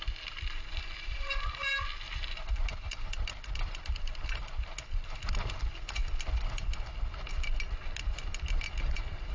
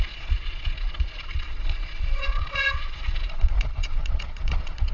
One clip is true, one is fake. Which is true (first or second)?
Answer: first